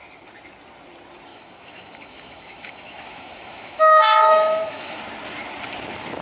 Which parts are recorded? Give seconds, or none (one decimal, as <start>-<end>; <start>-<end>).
0.0-1.3; 5.0-6.2